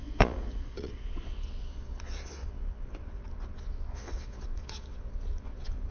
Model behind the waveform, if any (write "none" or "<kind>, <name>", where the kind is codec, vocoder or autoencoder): vocoder, Vocos